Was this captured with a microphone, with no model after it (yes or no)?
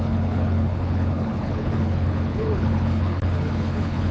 no